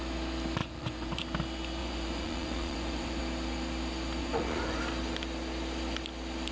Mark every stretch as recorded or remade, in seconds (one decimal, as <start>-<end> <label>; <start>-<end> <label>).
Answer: 0.0-0.6 recorded; 0.6-1.2 remade; 1.2-1.8 recorded; 1.8-3.2 remade; 3.2-4.2 recorded; 4.2-4.8 remade; 4.8-6.5 recorded